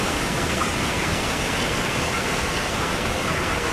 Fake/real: fake